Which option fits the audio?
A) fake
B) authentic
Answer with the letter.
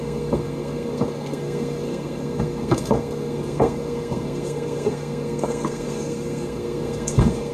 A